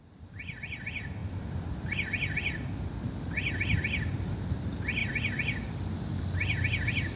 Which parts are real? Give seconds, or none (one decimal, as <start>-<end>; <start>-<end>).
0.0-7.2